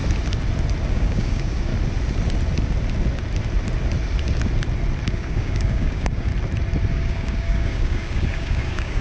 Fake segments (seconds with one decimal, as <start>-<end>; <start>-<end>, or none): 0.9-1.7; 5.1-6.3; 6.9-9.0